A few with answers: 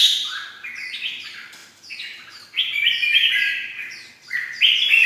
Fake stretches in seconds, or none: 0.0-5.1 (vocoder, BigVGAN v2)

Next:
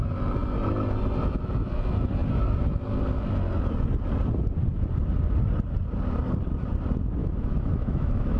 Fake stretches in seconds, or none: 7.2-8.4 (autoencoder, DAC-VAE)